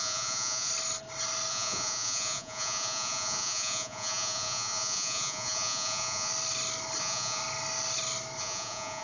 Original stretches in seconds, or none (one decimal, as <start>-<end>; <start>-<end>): 0.7-1.5; 6.3-7.0; 7.4-8.4